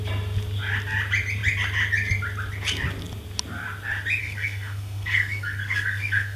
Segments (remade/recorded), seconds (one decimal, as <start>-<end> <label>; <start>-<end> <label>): 0.0-4.2 recorded; 4.2-6.4 remade